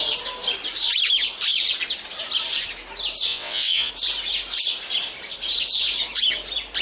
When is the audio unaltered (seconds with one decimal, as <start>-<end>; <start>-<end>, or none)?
0.0-3.3; 3.9-6.8